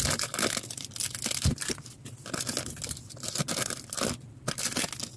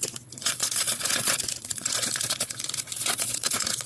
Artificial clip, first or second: second